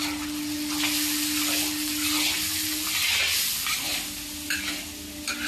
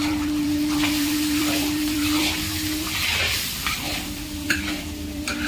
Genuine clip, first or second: first